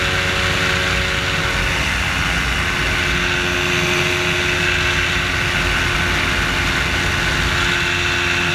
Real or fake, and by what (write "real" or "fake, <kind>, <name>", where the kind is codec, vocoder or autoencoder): real